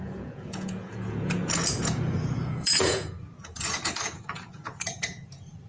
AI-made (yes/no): yes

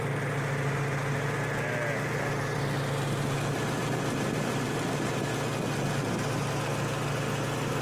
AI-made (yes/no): no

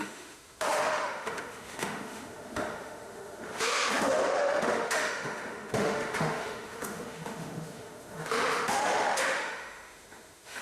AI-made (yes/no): yes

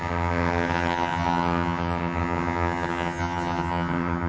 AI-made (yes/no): yes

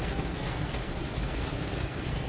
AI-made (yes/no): yes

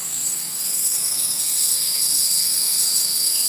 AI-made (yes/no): yes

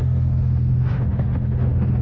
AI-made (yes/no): yes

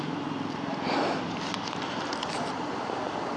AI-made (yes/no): no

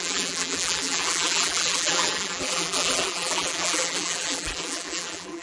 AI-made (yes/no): yes